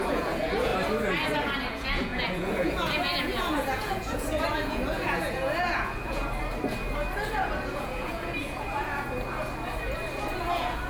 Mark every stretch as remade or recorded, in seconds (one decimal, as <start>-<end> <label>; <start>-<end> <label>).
0.0-0.7 remade; 0.7-1.7 recorded; 1.7-6.2 remade; 6.2-7.7 recorded; 7.7-8.9 remade; 8.9-10.4 recorded; 10.4-10.9 remade